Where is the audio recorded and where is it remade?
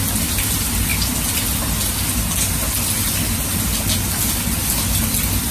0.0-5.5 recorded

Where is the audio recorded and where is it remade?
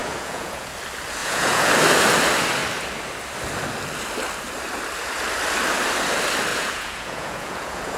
0.0-0.7 remade; 0.7-1.2 recorded; 1.2-1.7 remade; 1.7-6.5 recorded; 6.5-8.0 remade